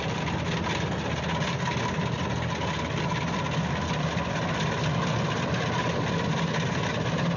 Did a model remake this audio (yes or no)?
no